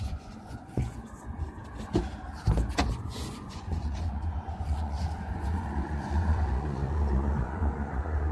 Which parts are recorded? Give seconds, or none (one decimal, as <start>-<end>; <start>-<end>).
1.6-2.9